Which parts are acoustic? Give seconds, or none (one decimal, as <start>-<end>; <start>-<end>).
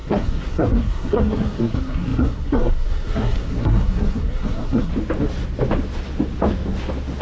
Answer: 4.9-7.2